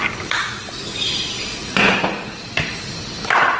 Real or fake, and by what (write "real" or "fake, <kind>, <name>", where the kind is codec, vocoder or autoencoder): real